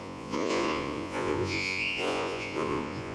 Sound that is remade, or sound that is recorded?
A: remade